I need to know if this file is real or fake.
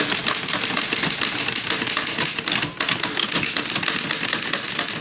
real